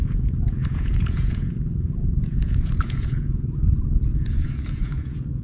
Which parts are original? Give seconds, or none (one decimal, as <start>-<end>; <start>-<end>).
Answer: none

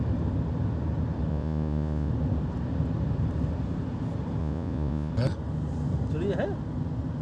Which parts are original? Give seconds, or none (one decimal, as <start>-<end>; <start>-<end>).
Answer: 0.0-1.3; 2.1-4.4; 5.1-7.2

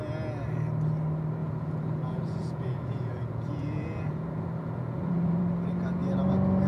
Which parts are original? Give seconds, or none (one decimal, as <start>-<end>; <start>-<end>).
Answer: 0.0-1.4; 5.4-6.7

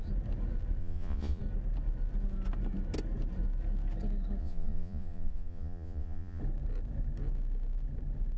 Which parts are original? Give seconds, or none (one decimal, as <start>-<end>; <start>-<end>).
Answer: 0.0-0.8; 1.4-4.4; 6.4-8.4

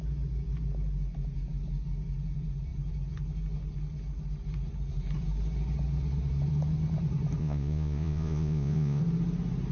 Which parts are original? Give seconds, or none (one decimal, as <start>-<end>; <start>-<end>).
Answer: 0.0-7.4; 9.0-9.7

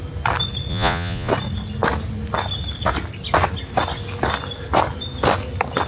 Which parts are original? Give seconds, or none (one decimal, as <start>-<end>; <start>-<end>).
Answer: 0.0-0.7; 1.3-5.9

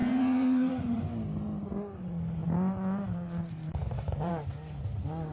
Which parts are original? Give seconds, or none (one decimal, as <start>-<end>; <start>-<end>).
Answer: 1.0-5.3